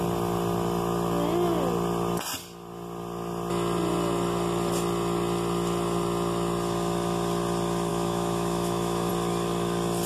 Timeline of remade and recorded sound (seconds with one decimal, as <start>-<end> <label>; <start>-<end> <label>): 0.0-7.9 recorded; 7.9-9.1 remade; 9.1-10.1 recorded